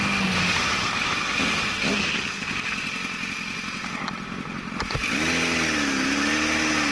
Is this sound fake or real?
real